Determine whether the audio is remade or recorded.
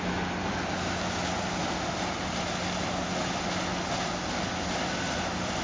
recorded